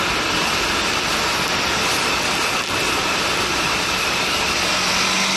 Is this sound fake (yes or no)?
no